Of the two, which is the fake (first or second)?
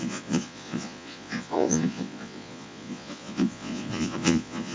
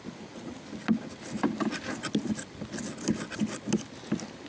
first